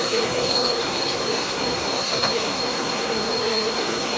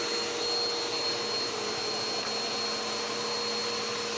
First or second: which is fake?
first